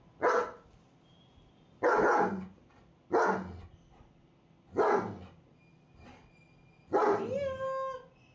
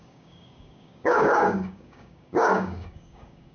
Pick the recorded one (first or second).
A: first